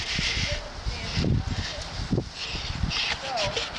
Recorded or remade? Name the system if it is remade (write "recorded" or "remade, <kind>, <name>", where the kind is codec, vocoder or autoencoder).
recorded